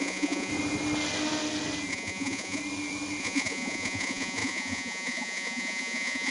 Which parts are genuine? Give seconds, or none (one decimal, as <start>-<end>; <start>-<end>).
0.5-1.9; 2.6-3.2